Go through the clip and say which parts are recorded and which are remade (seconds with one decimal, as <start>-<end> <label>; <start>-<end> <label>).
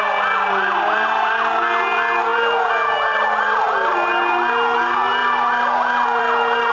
0.0-6.7 recorded